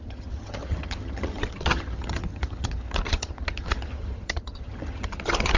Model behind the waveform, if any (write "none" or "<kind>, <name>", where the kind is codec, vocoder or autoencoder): vocoder, HiFi-GAN